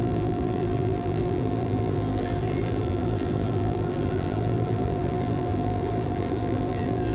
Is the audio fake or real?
fake